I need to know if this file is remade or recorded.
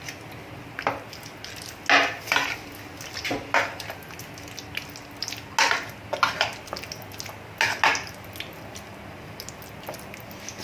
recorded